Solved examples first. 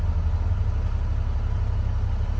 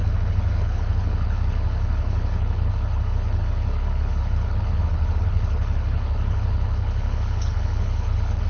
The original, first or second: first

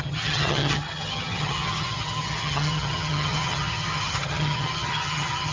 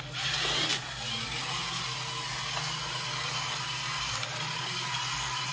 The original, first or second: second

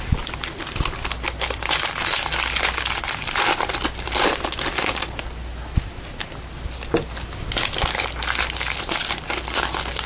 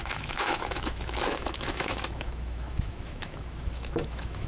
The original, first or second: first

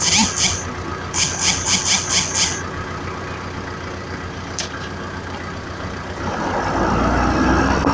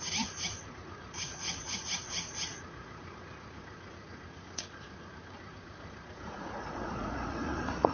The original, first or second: first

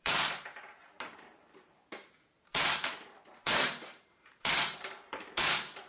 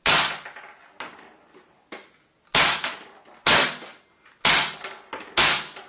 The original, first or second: second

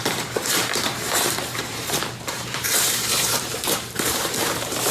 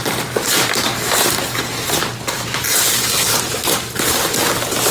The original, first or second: second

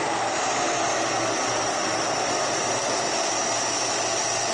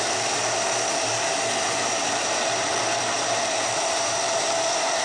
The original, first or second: first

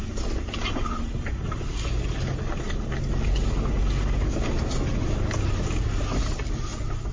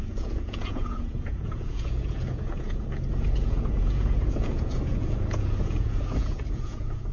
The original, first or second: first